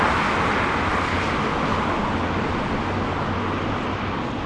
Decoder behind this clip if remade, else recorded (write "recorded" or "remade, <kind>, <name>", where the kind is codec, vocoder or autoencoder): recorded